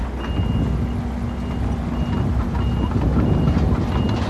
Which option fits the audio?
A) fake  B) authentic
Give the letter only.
B